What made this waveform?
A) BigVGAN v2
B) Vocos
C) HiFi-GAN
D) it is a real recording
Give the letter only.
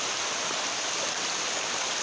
D